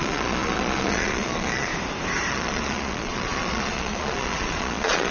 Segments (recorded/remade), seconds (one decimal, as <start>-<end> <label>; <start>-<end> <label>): 0.0-1.7 remade; 1.7-2.3 recorded; 2.3-5.1 remade